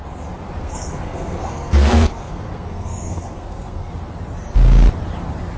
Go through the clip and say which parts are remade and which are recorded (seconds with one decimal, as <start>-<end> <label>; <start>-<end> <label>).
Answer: 0.0-0.6 recorded; 0.6-3.9 remade; 3.9-5.6 recorded